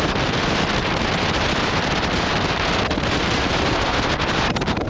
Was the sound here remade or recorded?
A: recorded